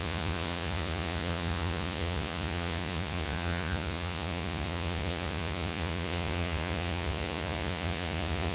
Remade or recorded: remade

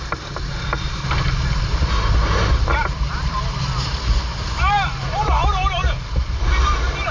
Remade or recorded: remade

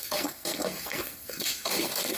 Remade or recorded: remade